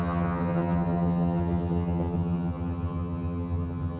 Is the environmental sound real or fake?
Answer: fake